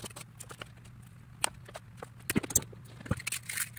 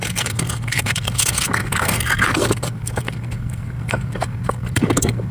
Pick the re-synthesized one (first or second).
second